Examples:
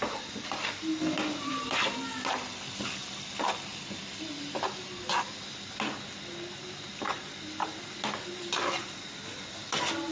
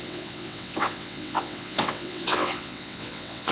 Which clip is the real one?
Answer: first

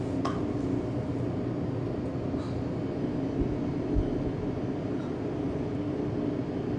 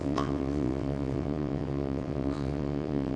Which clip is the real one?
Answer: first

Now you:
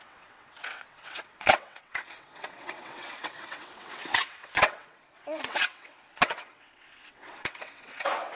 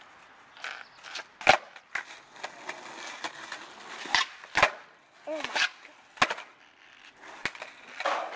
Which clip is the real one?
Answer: second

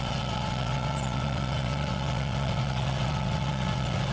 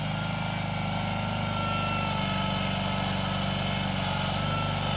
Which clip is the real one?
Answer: second